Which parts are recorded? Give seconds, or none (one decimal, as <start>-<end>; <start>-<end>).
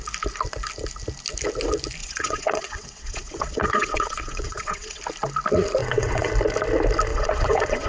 0.0-2.0; 5.0-5.8; 6.3-7.1